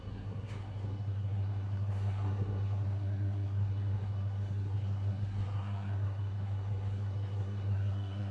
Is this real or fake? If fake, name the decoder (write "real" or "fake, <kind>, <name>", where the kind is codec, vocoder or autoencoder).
fake, codec, SNAC